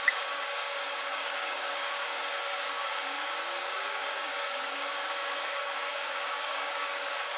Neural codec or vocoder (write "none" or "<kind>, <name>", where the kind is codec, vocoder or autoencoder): codec, DAC